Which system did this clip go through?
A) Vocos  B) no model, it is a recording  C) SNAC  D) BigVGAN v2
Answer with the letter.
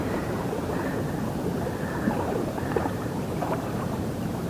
D